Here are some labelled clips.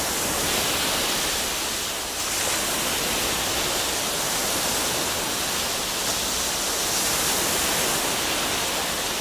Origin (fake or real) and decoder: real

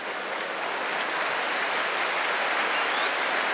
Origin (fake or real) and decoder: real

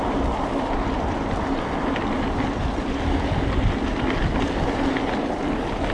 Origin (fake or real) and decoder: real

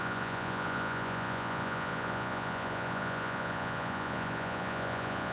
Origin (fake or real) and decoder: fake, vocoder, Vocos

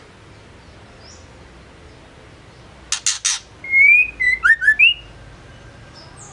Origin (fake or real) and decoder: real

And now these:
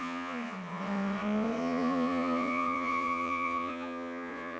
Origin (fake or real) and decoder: fake, vocoder, Vocos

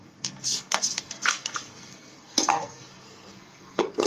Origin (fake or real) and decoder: fake, codec, SNAC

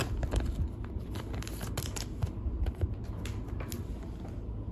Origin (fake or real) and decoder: real